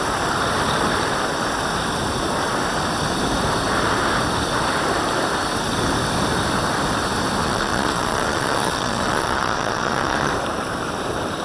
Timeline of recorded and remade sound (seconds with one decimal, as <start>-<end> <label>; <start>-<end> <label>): 0.0-7.4 recorded; 7.4-10.3 remade; 10.3-11.4 recorded

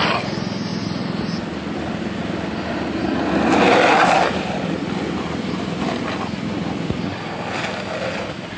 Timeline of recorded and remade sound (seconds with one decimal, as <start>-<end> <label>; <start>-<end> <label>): 0.0-8.6 recorded

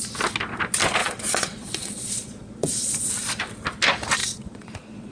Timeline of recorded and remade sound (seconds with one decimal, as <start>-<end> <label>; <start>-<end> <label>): 0.0-1.0 recorded; 1.0-3.1 remade; 3.1-4.2 recorded; 4.2-5.1 remade